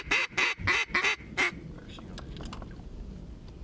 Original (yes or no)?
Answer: yes